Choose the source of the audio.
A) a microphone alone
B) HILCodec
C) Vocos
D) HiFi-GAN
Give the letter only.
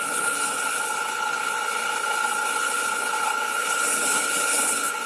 B